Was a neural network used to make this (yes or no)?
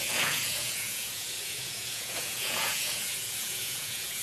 yes